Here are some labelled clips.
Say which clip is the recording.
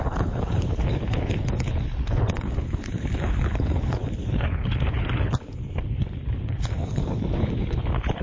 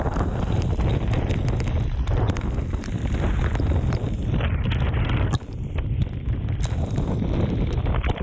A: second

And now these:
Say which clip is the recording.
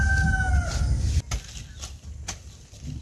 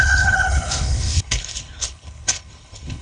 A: first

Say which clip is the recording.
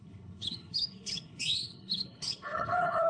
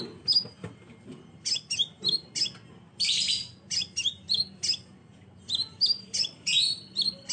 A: second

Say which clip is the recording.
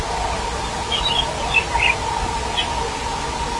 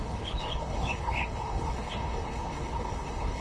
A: first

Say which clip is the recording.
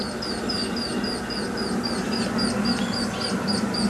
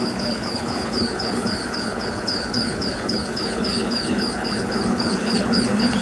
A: first